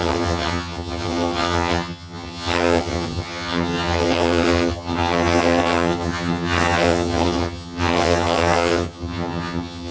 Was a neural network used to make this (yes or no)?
yes